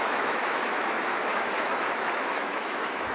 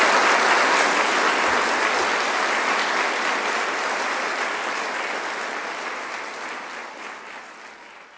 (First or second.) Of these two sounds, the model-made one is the first